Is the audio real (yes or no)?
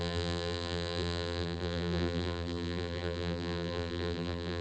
no